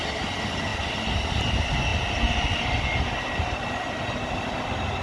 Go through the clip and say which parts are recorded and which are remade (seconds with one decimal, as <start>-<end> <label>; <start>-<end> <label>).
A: 0.0-5.0 recorded